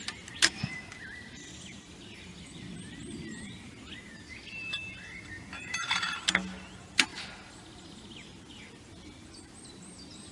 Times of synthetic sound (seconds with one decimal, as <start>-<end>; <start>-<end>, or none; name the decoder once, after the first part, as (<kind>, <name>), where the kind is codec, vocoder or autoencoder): none